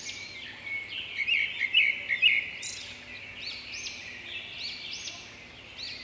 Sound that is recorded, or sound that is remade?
recorded